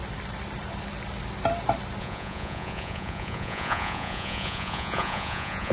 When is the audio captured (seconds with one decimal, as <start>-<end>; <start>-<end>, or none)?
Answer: 0.0-2.0